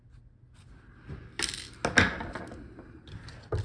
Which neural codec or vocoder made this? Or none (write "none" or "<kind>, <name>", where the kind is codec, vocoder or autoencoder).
none